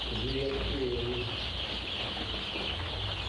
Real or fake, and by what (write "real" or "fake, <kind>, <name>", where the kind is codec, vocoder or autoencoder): real